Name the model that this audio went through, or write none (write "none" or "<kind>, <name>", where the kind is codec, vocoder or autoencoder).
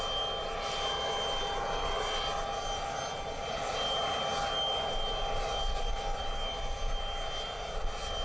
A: none